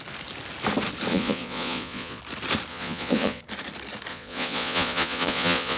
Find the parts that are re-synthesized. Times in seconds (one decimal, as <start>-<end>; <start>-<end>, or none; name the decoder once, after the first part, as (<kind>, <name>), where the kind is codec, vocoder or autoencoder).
1.1-2.2 (vocoder, Vocos); 2.7-3.4; 4.1-5.8